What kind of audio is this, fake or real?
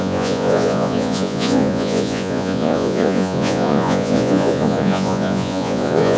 fake